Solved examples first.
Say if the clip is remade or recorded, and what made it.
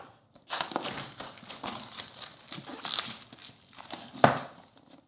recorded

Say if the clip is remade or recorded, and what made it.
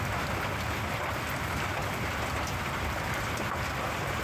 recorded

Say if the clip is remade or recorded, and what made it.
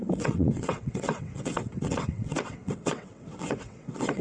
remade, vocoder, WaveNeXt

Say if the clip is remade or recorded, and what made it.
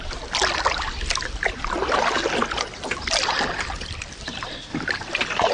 recorded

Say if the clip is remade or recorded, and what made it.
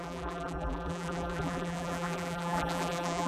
remade, vocoder, BigVGAN v2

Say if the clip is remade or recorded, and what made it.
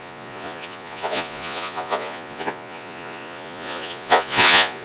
remade, vocoder, Vocos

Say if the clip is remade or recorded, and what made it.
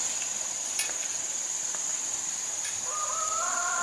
recorded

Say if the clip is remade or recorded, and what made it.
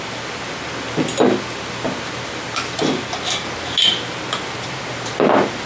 recorded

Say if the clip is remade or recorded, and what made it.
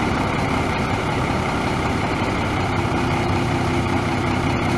remade, vocoder, BigVGAN v2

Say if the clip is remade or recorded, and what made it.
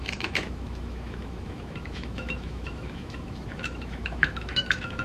remade, autoencoder, DAC-VAE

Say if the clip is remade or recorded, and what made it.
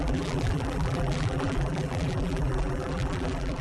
remade, vocoder, BigVGAN v2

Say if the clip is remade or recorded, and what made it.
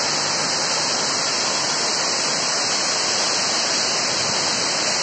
recorded